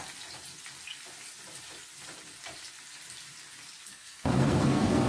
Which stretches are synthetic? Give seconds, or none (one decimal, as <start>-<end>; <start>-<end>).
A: 3.9-5.1